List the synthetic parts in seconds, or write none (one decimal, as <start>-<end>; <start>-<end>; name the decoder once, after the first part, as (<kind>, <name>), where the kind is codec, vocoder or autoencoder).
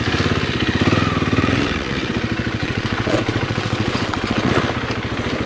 1.4-2.1 (vocoder, WaveNeXt); 2.6-4.5